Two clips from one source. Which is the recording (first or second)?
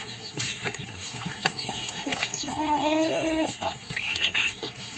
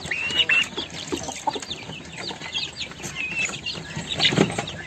second